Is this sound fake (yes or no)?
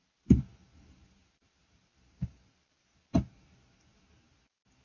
no